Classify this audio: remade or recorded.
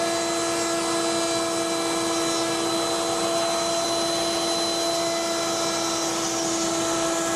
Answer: recorded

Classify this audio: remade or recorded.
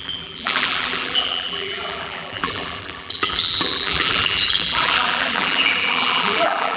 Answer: remade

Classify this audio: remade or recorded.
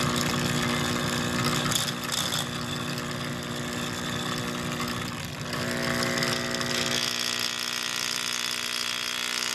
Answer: recorded